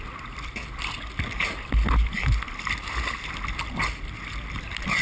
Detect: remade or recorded recorded